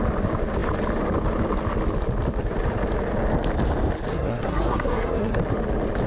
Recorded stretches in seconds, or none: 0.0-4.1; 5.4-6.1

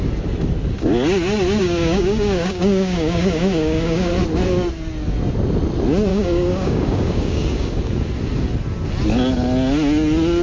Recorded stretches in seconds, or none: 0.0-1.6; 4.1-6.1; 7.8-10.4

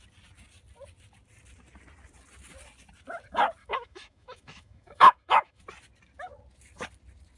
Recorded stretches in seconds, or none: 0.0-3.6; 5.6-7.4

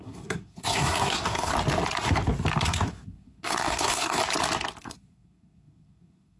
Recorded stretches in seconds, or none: 1.5-2.6; 4.2-4.8

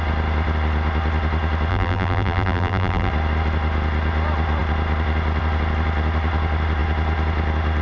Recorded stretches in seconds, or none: 0.0-1.7; 3.1-7.8

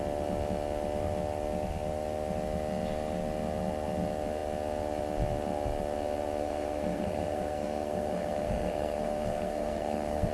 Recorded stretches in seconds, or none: 0.0-6.4

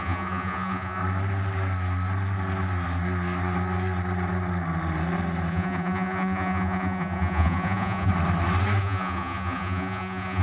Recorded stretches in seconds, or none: 1.0-5.5; 8.1-8.8

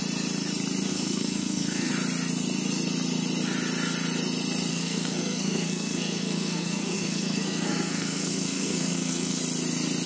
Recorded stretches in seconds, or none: 0.0-0.9; 1.9-4.7; 9.4-10.1